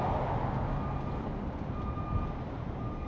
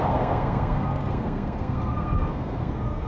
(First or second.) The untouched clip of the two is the first